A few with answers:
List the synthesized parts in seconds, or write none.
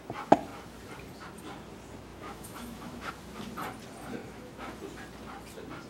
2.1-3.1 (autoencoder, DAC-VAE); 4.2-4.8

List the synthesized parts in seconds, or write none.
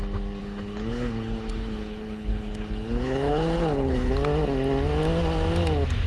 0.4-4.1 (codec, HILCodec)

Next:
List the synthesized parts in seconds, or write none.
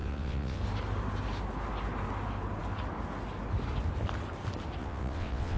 0.0-0.6 (vocoder, WaveNeXt); 4.8-5.6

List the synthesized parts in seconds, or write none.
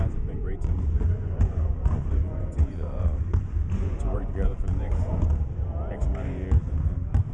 0.0-5.3 (vocoder, Vocos)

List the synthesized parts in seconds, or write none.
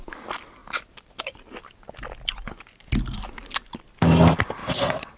4.6-5.2 (vocoder, WaveNeXt)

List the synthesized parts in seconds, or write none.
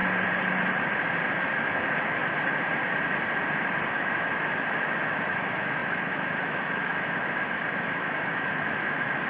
1.4-2.2 (autoencoder, DAC-VAE); 3.9-9.3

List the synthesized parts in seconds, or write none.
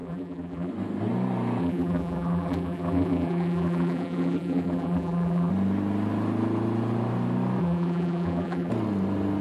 0.0-0.7 (vocoder, BigVGAN v2); 1.6-5.5; 7.6-8.7